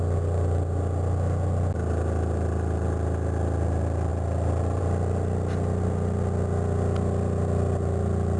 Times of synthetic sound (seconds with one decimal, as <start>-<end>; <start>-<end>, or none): 4.1-4.8